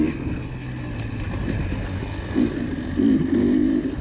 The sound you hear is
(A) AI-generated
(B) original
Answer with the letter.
B